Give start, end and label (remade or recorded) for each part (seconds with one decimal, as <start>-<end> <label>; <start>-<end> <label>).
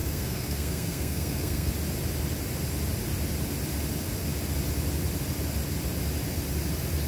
0.0-1.7 remade; 1.7-7.1 recorded